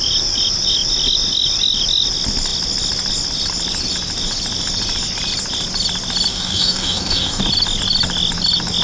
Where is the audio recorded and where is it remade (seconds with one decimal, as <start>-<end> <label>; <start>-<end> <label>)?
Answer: 0.0-6.3 recorded; 6.3-7.4 remade; 7.4-8.8 recorded

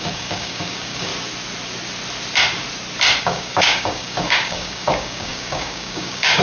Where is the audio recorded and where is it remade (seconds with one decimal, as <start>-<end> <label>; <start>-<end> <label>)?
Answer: 0.0-1.1 remade; 1.1-3.2 recorded; 3.2-6.4 remade

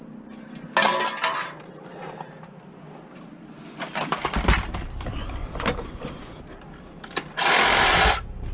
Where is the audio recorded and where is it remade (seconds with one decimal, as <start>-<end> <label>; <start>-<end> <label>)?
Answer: 0.0-5.4 recorded; 5.4-6.4 remade; 6.4-8.5 recorded

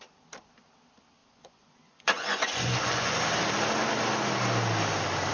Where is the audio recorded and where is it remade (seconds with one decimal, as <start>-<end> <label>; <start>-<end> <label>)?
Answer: 0.0-1.2 recorded; 1.2-3.2 remade; 3.2-5.3 recorded

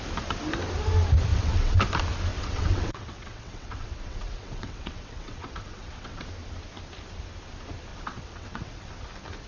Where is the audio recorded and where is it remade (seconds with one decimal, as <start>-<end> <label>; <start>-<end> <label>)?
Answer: 0.0-1.3 recorded; 1.3-1.8 remade; 1.8-2.3 recorded; 2.3-6.2 remade; 6.2-7.9 recorded; 7.9-8.9 remade; 8.9-9.5 recorded

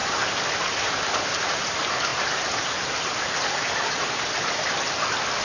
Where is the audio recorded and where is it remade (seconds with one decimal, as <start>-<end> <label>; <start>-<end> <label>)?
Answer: 0.0-5.4 recorded

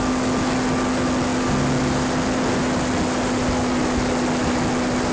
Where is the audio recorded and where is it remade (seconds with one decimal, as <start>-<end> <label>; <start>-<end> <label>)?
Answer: 0.0-5.1 recorded

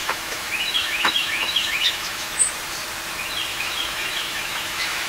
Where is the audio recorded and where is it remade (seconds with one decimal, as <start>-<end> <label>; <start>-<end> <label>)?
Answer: 0.0-2.5 remade; 2.5-3.5 recorded; 3.5-5.1 remade